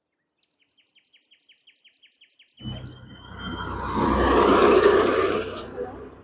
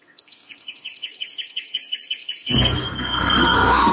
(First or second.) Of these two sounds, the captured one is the first